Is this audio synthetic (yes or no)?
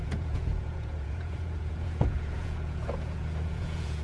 yes